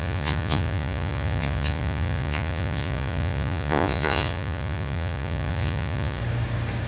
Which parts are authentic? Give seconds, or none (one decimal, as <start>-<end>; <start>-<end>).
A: 6.2-6.9